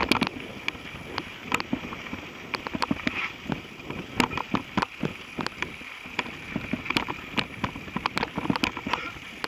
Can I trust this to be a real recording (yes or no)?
yes